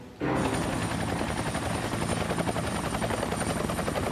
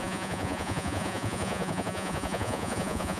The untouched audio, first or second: first